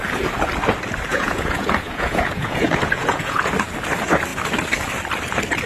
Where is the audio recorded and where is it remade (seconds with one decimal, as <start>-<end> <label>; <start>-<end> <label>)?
0.0-1.1 recorded; 1.1-3.4 remade; 3.4-5.7 recorded